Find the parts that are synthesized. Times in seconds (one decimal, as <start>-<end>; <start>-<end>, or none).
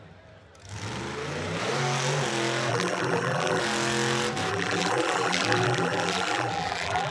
2.7-3.6; 4.5-7.1